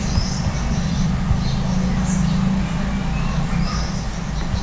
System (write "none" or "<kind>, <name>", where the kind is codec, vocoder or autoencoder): none